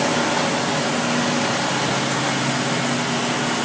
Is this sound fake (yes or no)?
no